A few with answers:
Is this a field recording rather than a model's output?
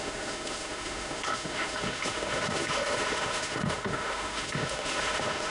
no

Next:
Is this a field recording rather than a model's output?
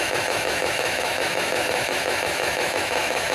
no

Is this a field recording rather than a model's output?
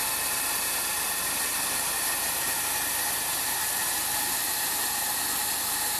yes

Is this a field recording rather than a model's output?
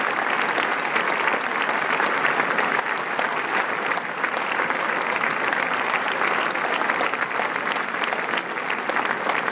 yes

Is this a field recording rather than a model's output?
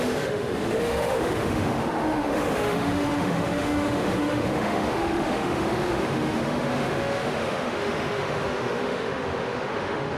no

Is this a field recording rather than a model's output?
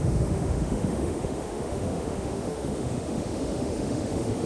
no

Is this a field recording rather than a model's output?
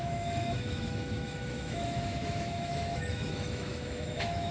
no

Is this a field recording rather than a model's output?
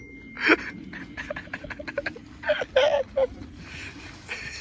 yes